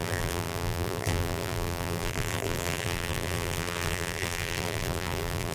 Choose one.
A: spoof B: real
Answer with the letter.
A